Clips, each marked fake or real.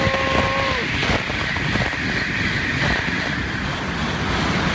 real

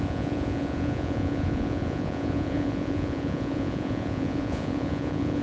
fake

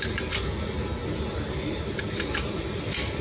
real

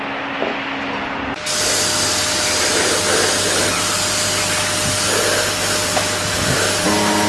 real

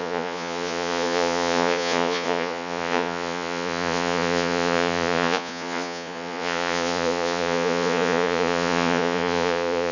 fake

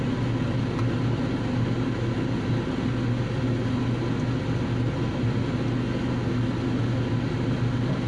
real